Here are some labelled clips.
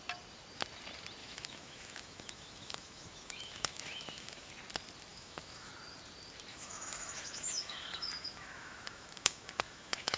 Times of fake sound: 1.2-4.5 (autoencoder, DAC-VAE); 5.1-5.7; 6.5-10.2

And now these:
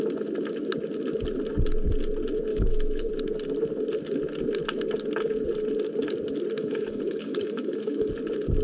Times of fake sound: 2.5-3.1 (autoencoder, DAC-VAE); 6.6-8.1

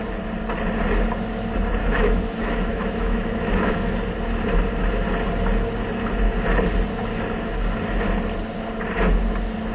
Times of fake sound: 1.8-3.9 (autoencoder, DAC-VAE)

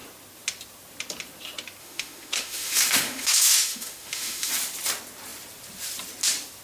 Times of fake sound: 1.8-4.5 (autoencoder, DAC-VAE)

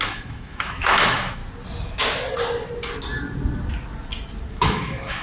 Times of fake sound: 0.0-1.4 (autoencoder, DAC-VAE); 4.5-5.2

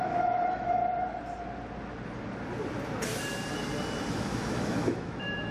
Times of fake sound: 0.0-0.8 (autoencoder, DAC-VAE); 4.1-5.5